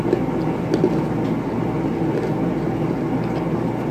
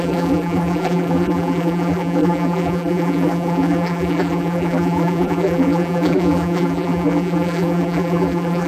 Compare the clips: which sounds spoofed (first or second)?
second